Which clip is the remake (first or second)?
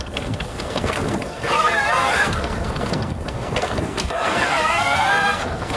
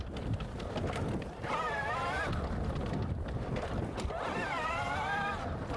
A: first